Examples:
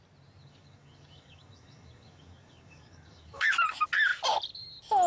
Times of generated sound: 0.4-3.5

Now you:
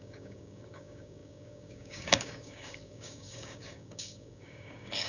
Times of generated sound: 0.0-5.1

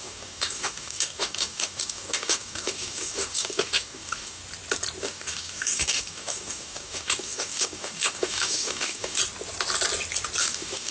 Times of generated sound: 0.0-4.4; 5.0-9.2; 10.4-10.9

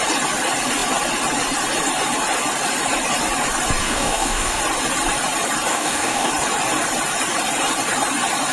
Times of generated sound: 3.8-4.6; 5.7-6.3

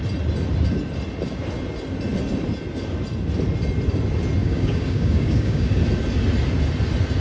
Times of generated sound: 4.4-5.8

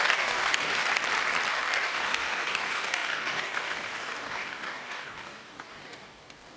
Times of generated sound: 0.0-0.9; 1.5-6.6

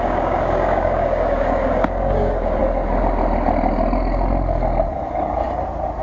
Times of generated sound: 0.0-2.6

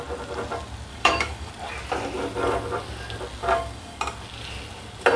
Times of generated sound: 0.9-1.5; 3.4-4.0